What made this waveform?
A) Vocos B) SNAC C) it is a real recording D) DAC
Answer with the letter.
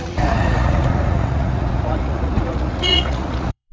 A